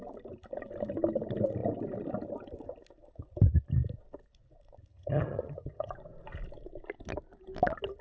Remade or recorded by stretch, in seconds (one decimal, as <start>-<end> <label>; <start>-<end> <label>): 0.0-4.9 recorded; 4.9-5.9 remade; 5.9-8.0 recorded